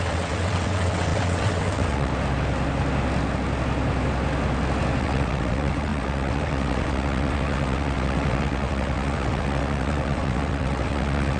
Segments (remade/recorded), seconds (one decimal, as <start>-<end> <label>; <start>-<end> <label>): 0.0-2.1 remade; 2.1-5.0 recorded; 5.0-11.4 remade